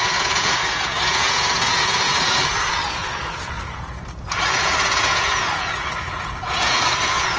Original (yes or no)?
no